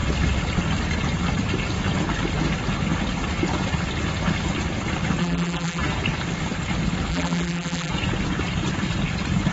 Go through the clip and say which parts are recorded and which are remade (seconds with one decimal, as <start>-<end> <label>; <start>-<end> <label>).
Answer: 0.0-5.2 recorded; 5.2-5.8 remade; 5.8-7.1 recorded; 7.1-7.9 remade; 7.9-9.5 recorded